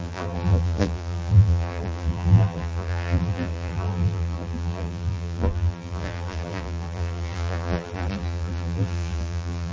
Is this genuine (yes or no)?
no